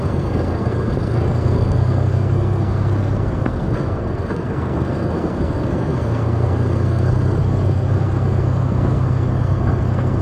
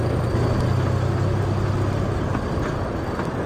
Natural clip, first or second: second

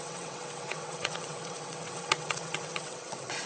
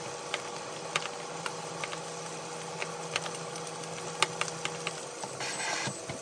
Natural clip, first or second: second